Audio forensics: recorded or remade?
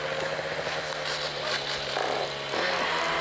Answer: recorded